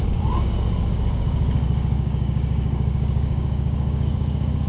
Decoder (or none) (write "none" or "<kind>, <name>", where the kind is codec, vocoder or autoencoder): codec, DAC